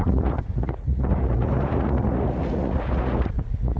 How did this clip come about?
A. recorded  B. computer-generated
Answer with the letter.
B